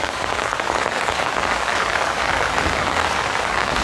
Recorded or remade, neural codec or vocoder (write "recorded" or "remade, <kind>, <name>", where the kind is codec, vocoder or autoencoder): remade, codec, DAC